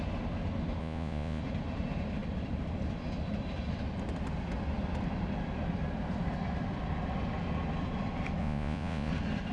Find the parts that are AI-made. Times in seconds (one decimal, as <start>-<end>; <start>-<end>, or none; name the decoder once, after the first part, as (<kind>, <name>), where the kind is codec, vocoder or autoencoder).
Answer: 0.8-1.4 (vocoder, Vocos); 8.4-9.1

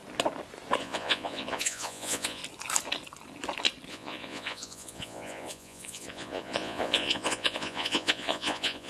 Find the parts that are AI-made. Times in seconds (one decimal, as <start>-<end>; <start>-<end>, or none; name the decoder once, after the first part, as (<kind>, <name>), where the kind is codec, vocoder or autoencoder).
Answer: 0.8-2.4 (vocoder, Vocos); 3.9-8.9